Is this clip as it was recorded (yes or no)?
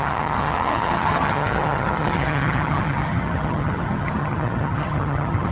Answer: no